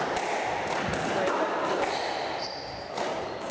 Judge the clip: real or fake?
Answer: real